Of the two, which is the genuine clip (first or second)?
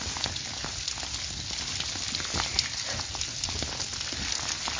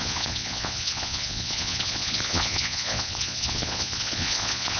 first